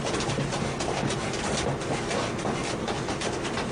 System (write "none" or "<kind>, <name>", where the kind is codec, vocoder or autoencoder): none